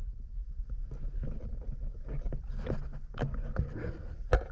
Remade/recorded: recorded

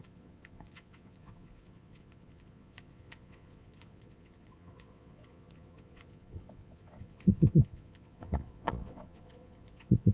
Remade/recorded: remade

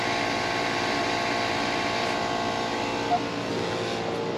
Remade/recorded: recorded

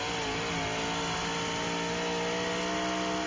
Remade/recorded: recorded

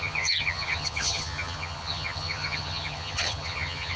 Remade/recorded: remade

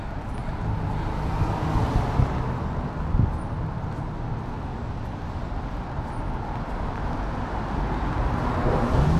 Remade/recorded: recorded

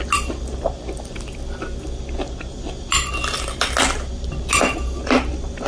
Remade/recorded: recorded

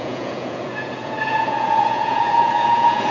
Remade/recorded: remade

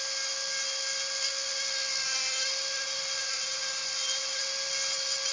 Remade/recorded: recorded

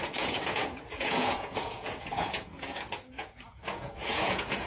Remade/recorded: remade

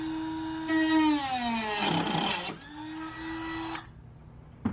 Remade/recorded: recorded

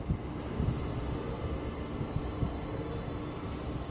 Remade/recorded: recorded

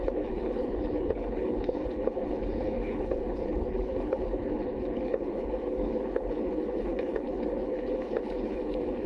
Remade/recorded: remade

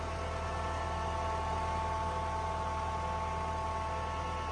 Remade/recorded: recorded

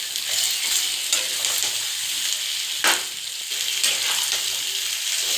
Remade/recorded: recorded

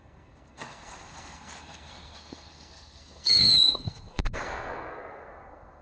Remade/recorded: remade